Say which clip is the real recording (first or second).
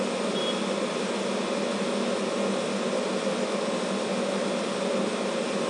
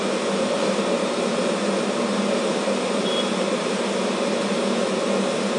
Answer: first